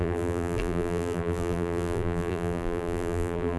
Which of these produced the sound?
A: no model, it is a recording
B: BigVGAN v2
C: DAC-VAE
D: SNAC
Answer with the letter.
B